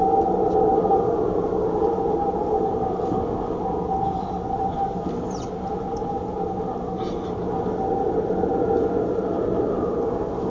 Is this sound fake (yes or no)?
no